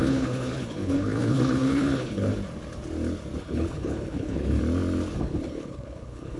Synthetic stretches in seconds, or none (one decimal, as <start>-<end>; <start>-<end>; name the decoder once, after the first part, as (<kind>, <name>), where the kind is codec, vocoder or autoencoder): 0.0-2.3 (codec, HILCodec); 3.4-4.6; 5.2-6.4